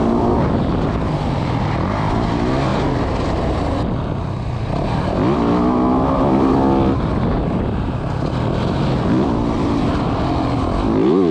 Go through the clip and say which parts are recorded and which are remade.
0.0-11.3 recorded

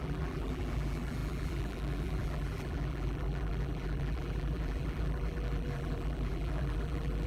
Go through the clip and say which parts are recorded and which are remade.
0.0-7.3 remade

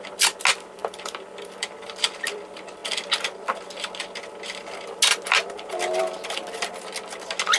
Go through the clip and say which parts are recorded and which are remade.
0.0-0.8 recorded; 0.8-2.4 remade; 2.4-7.6 recorded

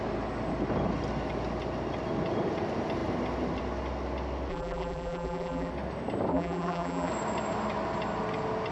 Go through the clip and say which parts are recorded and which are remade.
0.0-4.5 recorded; 4.5-5.7 remade; 5.7-6.3 recorded; 6.3-7.1 remade; 7.1-8.7 recorded

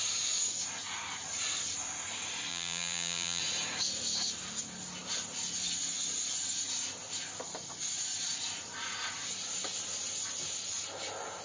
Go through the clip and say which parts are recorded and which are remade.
0.0-2.5 recorded; 2.5-3.4 remade; 3.4-11.4 recorded

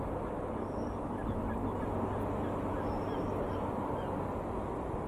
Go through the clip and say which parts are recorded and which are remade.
0.0-1.7 recorded; 1.7-5.1 remade